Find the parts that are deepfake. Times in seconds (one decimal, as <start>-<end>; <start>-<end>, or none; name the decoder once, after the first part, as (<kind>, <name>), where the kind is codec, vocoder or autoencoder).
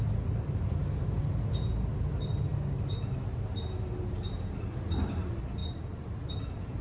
none